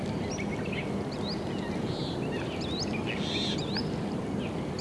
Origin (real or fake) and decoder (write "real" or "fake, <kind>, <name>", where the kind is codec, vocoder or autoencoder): real